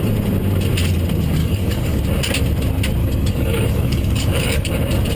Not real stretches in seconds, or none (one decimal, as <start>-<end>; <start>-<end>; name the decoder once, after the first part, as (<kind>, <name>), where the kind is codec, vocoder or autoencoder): 1.4-2.0 (codec, DAC); 3.0-4.7